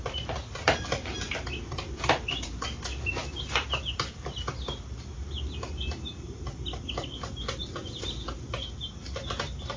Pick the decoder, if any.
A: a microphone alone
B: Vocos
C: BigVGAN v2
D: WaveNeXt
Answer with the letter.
A